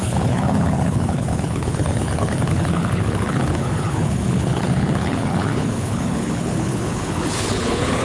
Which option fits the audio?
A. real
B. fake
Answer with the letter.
B